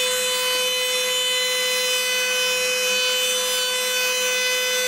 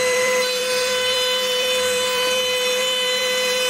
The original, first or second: first